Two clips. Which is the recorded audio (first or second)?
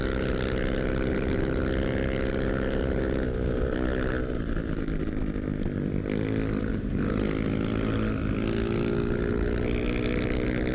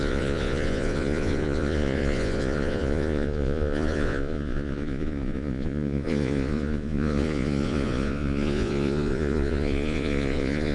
first